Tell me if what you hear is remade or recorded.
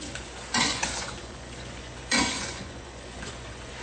remade